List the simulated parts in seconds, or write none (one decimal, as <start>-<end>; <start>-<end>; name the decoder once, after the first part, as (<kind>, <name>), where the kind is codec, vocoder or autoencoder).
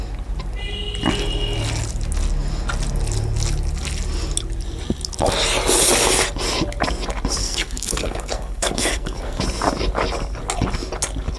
7.4-9.4 (codec, SNAC)